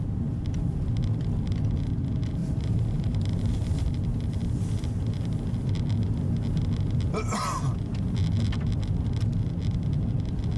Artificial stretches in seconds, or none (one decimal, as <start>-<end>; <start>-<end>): 2.4-4.0